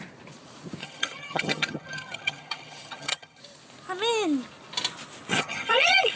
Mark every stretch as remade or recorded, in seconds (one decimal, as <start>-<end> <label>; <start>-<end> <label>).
0.0-0.8 recorded; 0.8-3.4 remade; 3.4-5.3 recorded; 5.3-6.2 remade